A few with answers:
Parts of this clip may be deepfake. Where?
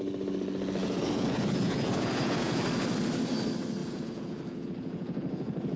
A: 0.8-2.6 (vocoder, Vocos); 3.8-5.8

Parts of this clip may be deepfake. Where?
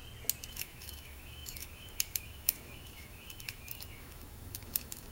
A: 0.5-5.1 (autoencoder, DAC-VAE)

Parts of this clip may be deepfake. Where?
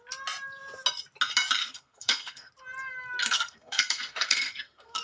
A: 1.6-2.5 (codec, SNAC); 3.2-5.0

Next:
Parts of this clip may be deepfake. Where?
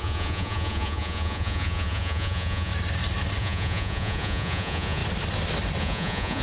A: 0.0-2.7 (vocoder, Vocos); 3.4-5.0; 5.8-6.4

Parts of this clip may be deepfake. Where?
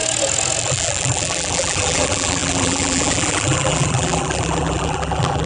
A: 0.6-5.5 (vocoder, BigVGAN v2)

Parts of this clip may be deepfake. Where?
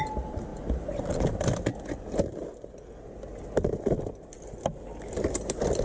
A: none